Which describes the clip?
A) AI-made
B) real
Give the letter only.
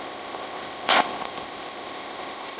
A